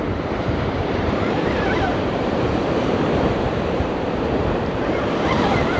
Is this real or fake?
fake